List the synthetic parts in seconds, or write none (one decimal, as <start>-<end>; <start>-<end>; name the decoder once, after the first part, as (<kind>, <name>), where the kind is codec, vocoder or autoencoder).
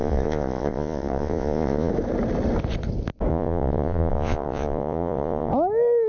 0.0-1.9 (vocoder, Vocos); 3.3-5.5